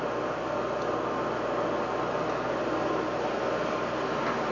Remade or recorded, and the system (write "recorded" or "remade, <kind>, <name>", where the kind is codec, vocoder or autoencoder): recorded